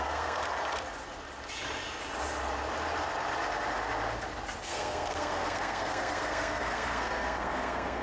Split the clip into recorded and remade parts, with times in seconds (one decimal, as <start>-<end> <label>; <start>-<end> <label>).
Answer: 0.0-0.4 remade; 0.4-4.6 recorded; 4.6-8.0 remade